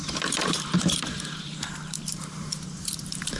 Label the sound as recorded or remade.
remade